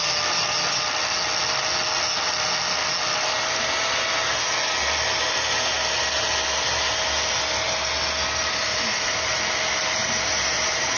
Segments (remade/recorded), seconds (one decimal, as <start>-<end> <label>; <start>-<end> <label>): 0.0-8.7 recorded; 8.7-9.4 remade; 9.4-10.0 recorded; 10.0-11.0 remade